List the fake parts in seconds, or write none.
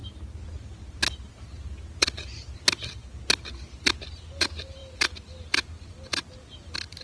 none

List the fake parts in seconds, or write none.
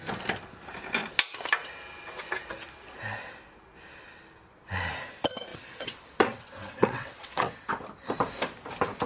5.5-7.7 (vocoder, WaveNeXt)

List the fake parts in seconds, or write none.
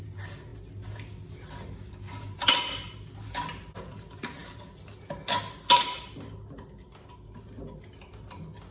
none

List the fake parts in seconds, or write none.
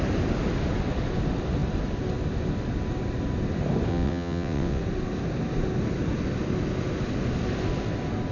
3.9-4.8 (vocoder, WaveNeXt)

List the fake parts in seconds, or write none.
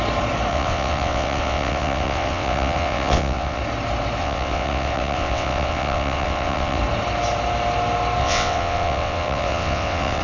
0.5-3.6 (vocoder, WaveNeXt); 4.2-6.8; 8.2-10.2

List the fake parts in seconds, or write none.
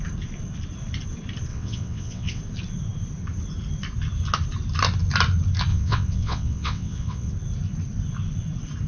1.5-2.4 (vocoder, WaveNeXt); 5.7-7.3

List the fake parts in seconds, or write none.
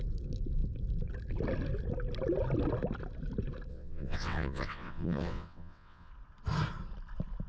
3.7-6.1 (vocoder, WaveNeXt)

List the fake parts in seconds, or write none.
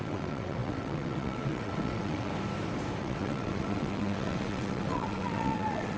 0.0-2.3 (vocoder, WaveNeXt); 3.0-6.0